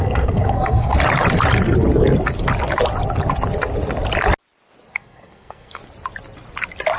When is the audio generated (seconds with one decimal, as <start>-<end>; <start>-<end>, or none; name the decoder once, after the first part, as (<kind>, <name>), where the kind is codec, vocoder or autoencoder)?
0.0-0.9 (codec, SNAC); 4.9-5.8